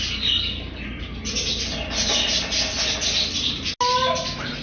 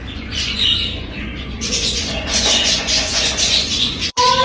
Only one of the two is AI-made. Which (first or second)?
second